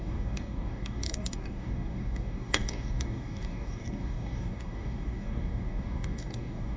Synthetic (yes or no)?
yes